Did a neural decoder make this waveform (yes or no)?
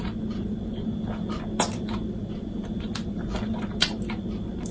no